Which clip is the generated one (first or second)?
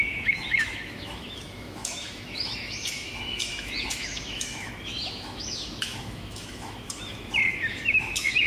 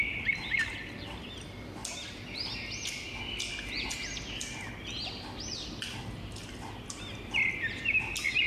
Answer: first